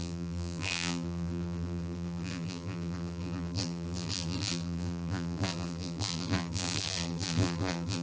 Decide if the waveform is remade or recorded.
remade